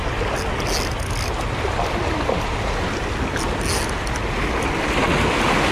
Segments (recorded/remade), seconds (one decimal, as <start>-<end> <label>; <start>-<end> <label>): 0.0-2.0 recorded; 2.0-3.0 remade; 3.0-5.7 recorded